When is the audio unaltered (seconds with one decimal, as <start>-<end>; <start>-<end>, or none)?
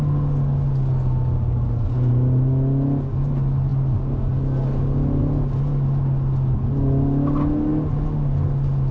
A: 0.0-8.9